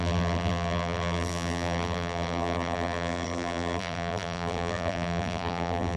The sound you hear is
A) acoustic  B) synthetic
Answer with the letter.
B